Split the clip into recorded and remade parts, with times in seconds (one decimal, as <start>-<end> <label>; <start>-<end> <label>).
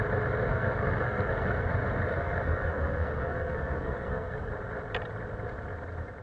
0.0-0.5 recorded; 0.5-1.7 remade; 1.7-2.1 recorded; 2.1-4.5 remade; 4.5-6.2 recorded